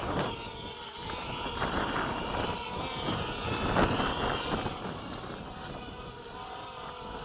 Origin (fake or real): real